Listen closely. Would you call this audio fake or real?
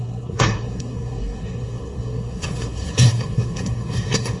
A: fake